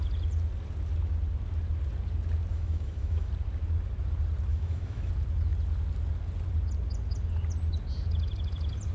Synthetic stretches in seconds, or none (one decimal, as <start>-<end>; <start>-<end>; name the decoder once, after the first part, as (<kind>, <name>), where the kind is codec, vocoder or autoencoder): 2.5-3.3 (autoencoder, DAC-VAE); 4.5-5.1